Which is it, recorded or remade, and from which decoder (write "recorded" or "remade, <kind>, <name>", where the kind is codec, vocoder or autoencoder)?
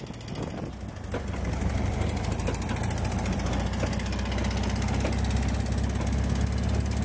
recorded